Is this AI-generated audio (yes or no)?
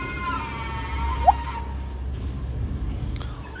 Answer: no